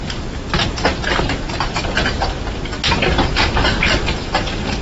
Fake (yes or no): no